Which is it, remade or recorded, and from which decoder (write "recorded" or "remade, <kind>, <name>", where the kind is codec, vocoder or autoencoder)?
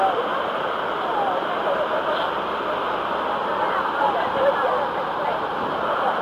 remade, vocoder, BigVGAN v2